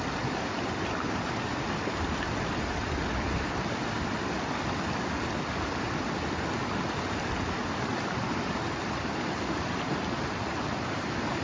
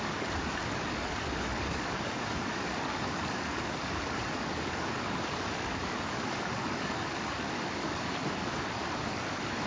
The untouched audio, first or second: first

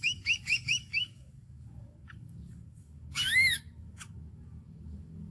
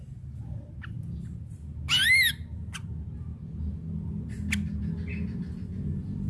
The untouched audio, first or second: second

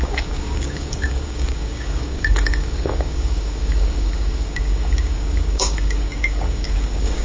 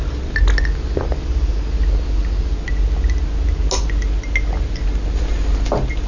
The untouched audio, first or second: second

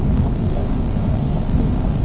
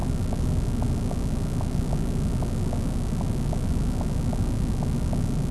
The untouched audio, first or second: second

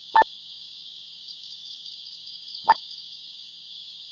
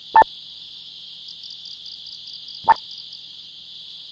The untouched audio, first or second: second